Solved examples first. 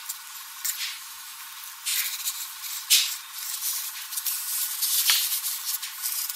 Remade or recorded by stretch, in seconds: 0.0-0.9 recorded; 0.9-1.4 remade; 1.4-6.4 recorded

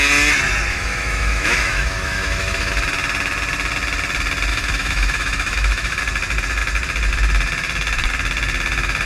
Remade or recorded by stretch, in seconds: 0.0-0.7 recorded; 0.7-2.7 remade; 2.7-4.5 recorded; 4.5-6.0 remade; 6.0-9.1 recorded

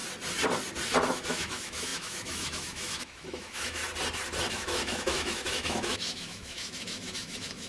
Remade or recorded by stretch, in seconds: 0.0-1.1 recorded; 1.1-3.8 remade; 3.8-4.5 recorded; 4.5-7.7 remade